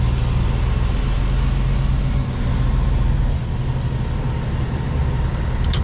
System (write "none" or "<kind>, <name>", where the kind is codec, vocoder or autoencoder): none